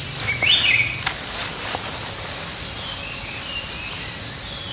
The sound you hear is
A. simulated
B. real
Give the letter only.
B